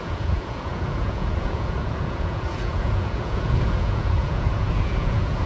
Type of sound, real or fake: fake